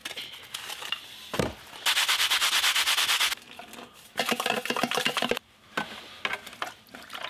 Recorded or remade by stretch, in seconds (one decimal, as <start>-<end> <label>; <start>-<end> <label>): 0.0-7.3 recorded